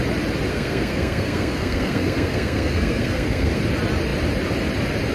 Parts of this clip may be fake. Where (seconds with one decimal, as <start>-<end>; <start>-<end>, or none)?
0.5-3.6